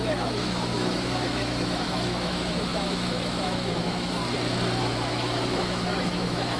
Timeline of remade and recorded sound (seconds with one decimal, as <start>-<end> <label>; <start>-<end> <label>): 0.0-4.2 remade; 4.2-4.8 recorded; 4.8-6.6 remade

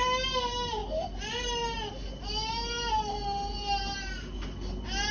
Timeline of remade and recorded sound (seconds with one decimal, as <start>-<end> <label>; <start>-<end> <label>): 0.0-5.1 recorded

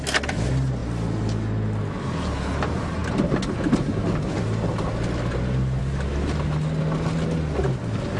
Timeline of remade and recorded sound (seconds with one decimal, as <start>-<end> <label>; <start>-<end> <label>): 0.0-8.2 recorded

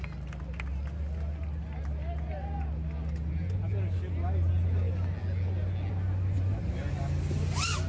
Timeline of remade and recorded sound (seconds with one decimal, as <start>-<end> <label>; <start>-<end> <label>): 0.0-7.9 recorded

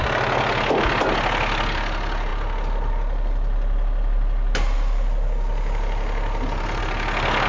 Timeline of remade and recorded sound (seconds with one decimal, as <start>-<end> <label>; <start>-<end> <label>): 0.0-7.5 recorded

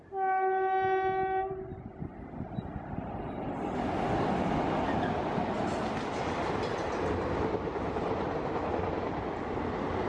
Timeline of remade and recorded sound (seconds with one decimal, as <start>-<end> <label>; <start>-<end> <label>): 0.0-7.7 recorded; 7.7-9.2 remade; 9.2-10.1 recorded